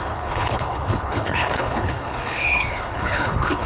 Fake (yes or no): yes